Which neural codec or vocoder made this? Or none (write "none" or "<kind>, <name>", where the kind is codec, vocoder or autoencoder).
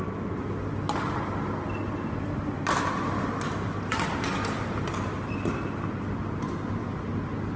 none